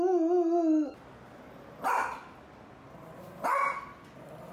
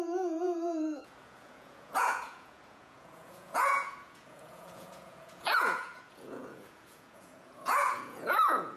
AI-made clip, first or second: second